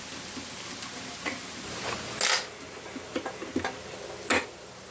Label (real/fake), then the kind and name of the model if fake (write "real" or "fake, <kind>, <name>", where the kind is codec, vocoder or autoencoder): real